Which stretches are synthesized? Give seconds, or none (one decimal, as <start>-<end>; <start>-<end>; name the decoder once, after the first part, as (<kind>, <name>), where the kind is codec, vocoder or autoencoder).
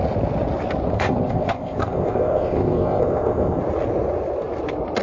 0.9-3.6 (codec, ZipCodec)